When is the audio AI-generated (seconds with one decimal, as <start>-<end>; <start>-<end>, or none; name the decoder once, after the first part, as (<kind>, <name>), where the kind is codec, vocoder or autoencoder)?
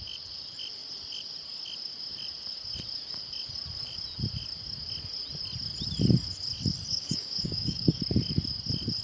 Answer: 6.9-8.0 (codec, DAC)